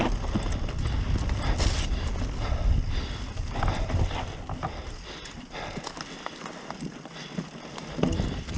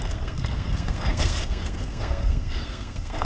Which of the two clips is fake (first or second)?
second